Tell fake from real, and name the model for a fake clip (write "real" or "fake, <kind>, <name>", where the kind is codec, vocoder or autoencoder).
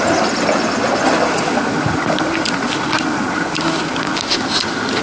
real